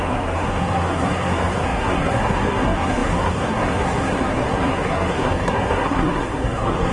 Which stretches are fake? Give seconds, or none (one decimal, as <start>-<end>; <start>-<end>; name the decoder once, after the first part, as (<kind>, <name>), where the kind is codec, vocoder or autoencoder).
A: 0.0-6.9 (codec, SNAC)